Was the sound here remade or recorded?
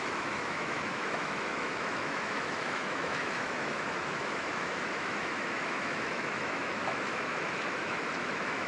remade